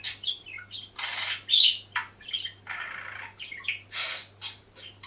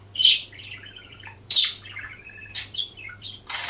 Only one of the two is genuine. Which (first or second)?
first